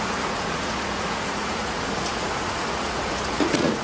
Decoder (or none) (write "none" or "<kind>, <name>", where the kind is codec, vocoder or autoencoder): vocoder, Vocos